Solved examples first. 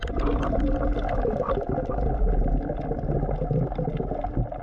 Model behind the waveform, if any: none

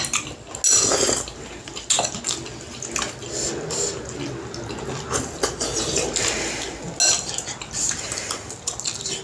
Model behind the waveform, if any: none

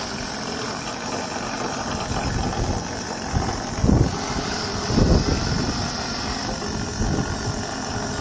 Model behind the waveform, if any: none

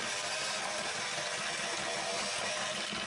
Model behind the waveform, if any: none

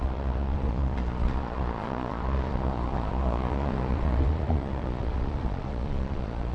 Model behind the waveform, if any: vocoder, Vocos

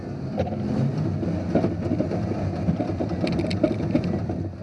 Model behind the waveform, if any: none